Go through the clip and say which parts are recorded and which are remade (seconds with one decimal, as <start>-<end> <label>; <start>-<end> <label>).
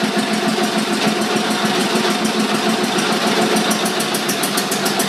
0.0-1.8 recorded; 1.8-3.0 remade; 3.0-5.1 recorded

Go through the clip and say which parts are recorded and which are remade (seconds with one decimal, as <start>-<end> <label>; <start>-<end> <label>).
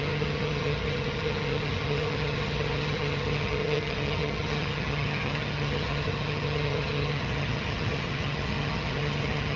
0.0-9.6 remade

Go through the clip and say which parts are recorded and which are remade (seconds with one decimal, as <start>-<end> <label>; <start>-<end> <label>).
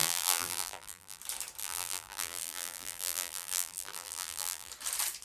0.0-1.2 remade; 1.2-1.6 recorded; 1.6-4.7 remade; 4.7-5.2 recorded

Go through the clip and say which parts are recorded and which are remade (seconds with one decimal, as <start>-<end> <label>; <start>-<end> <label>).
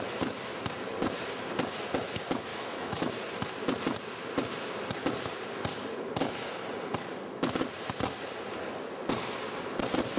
0.0-2.5 recorded; 2.5-3.1 remade; 3.1-10.2 recorded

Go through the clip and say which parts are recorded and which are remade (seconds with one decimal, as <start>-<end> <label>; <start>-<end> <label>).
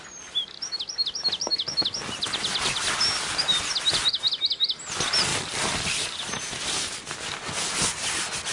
0.0-5.3 recorded; 5.3-6.5 remade; 6.5-8.5 recorded